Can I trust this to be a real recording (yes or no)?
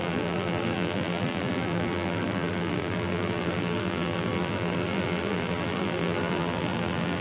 no